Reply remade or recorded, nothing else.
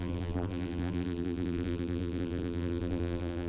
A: remade